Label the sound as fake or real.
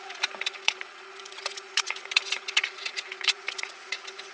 fake